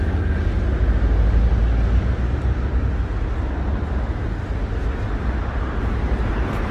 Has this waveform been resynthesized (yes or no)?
no